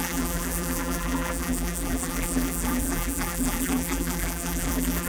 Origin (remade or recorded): remade